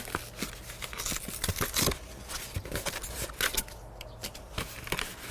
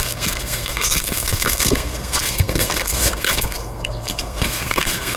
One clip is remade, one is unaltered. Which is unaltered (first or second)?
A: first